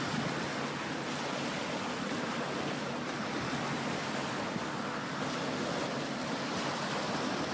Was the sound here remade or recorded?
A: recorded